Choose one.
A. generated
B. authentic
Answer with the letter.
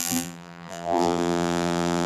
A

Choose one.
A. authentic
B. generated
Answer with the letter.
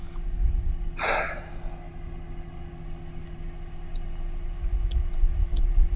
A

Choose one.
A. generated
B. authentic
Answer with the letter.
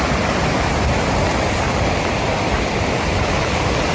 B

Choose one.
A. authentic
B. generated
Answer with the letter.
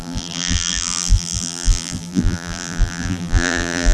B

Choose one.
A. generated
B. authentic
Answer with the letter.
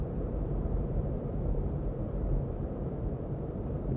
A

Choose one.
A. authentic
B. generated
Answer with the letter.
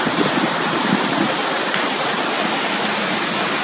A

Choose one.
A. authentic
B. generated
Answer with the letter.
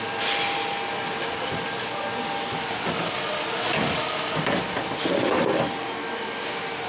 A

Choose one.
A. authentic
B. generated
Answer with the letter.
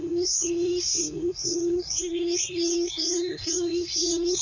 B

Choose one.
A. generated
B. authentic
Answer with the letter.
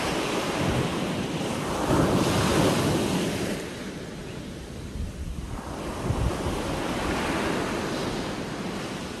B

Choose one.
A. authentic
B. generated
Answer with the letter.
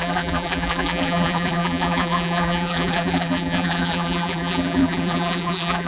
B